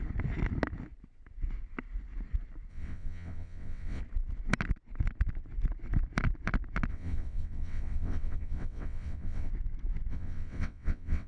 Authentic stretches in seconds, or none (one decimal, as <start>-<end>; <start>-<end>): 0.0-2.7; 4.0-6.9; 9.5-10.1